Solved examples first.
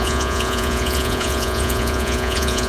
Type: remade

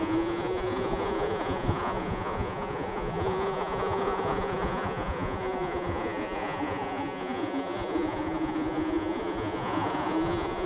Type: remade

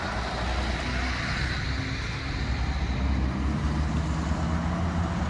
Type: recorded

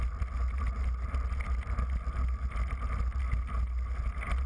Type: recorded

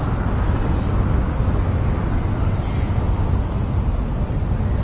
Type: recorded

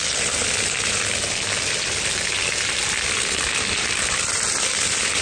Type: recorded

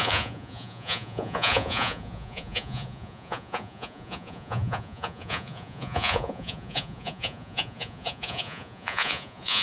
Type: remade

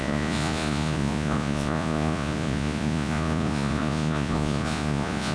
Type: remade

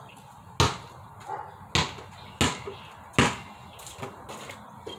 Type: recorded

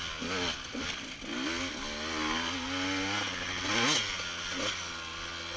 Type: recorded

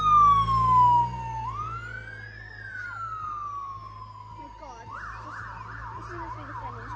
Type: recorded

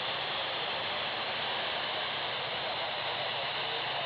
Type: recorded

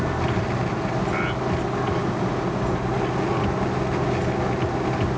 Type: recorded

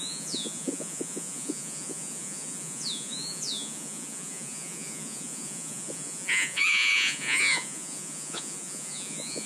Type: remade